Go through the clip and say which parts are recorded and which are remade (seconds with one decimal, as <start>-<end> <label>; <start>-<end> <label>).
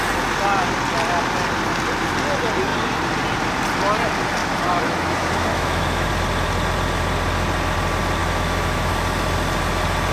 0.0-4.4 recorded; 4.4-6.1 remade; 6.1-8.2 recorded; 8.2-8.9 remade; 8.9-10.1 recorded